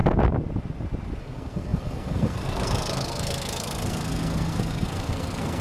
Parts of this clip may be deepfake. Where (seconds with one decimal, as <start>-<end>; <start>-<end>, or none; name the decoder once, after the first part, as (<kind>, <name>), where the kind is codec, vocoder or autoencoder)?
1.2-5.6 (codec, SNAC)